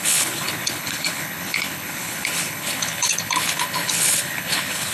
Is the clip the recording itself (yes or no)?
no